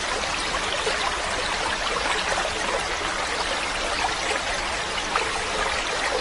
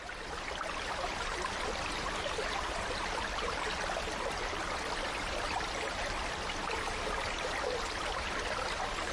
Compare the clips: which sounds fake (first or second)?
second